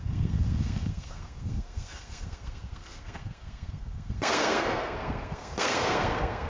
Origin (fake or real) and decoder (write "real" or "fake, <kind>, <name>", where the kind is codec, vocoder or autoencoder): fake, codec, SNAC